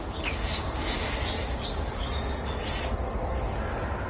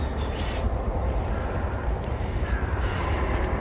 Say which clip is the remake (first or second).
second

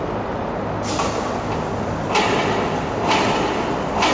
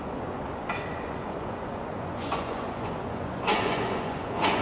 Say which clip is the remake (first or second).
second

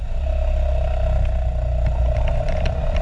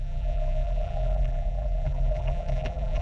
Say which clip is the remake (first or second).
second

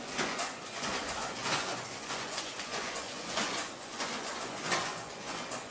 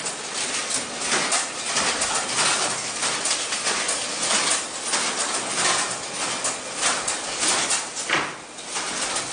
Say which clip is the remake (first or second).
first